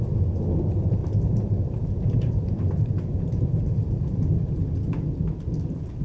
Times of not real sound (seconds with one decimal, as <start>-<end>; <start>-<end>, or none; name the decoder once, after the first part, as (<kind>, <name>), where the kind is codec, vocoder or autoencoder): 1.0-4.4 (vocoder, BigVGAN v2)

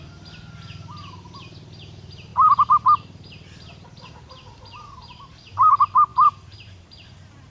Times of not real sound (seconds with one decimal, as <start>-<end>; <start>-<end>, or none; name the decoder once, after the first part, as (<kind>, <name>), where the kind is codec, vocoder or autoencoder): 6.1-7.5 (vocoder, BigVGAN v2)

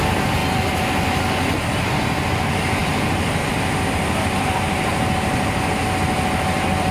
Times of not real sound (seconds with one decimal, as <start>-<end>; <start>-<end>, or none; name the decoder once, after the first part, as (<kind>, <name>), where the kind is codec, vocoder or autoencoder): 0.4-1.2 (vocoder, BigVGAN v2); 2.8-6.9

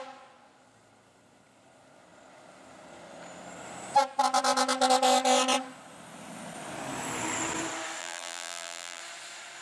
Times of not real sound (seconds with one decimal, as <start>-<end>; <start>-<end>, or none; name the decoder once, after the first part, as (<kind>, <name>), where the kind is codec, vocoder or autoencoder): 8.0-9.0 (vocoder, BigVGAN v2)